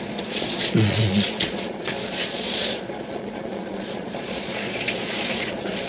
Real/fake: fake